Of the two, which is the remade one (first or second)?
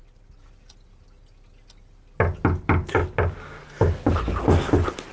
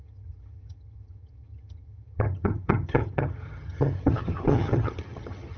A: second